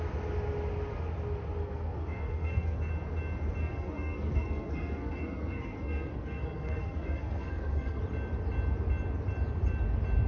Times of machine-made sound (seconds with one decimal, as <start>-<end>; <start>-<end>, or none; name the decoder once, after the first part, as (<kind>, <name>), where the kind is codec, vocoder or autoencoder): 1.6-2.9 (codec, SNAC); 3.6-8.0